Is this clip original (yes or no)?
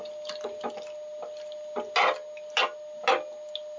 yes